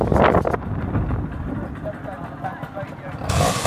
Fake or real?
real